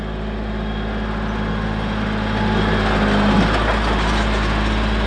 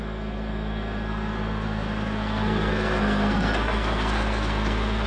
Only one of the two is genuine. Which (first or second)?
first